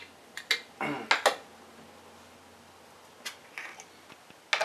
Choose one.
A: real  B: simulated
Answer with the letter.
A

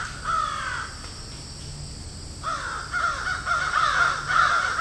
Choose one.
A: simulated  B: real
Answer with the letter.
B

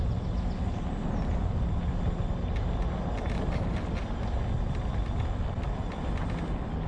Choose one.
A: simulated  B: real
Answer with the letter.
B